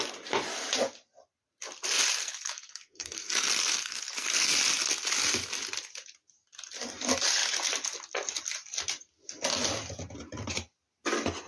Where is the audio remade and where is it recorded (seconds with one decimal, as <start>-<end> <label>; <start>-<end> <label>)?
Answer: 0.0-2.2 recorded; 2.2-4.5 remade; 4.5-11.5 recorded